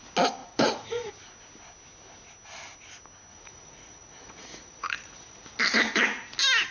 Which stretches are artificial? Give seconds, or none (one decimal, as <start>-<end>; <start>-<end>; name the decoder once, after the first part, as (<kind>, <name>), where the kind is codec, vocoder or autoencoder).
0.4-1.1 (vocoder, Vocos); 3.3-5.6